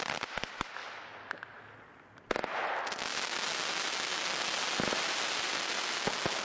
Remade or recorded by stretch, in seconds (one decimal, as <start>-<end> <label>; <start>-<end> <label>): 0.0-6.4 recorded